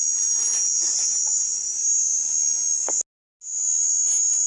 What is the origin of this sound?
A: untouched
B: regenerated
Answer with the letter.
A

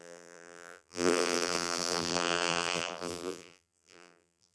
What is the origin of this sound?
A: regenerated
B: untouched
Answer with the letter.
A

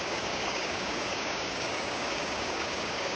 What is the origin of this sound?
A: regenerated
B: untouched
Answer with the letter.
A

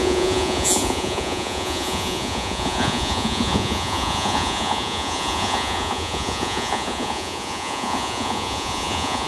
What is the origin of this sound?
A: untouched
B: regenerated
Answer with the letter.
B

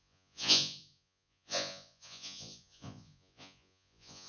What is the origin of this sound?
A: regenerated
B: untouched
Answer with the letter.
A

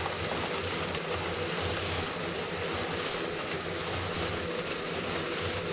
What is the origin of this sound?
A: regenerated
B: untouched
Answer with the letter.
B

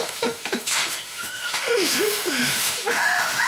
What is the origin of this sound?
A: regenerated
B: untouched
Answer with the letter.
A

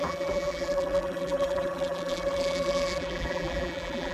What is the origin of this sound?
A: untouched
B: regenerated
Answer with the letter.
B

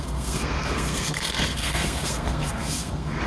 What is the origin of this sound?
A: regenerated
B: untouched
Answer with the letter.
A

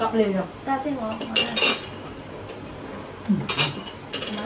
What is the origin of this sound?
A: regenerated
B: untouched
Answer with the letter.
B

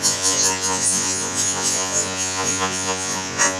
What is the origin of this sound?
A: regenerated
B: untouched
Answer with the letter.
A